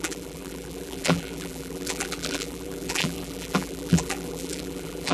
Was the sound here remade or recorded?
remade